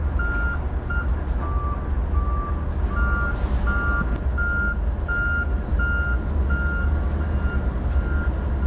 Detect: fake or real real